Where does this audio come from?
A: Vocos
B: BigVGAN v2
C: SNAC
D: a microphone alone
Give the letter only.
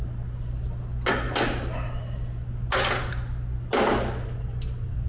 D